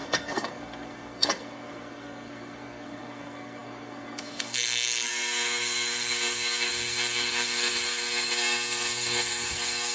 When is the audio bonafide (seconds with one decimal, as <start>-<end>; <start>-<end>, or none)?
none